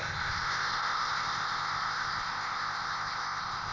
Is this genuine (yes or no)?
no